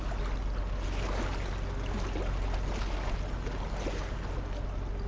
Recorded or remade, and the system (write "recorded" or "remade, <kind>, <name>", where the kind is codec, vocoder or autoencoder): recorded